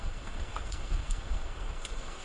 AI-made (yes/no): yes